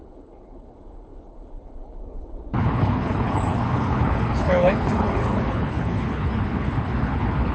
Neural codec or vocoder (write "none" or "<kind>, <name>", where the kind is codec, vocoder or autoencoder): codec, HILCodec